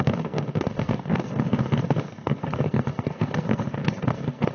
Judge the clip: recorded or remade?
remade